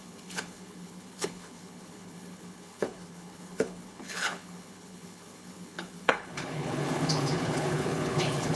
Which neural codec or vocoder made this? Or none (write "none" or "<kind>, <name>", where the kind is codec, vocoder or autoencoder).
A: codec, HILCodec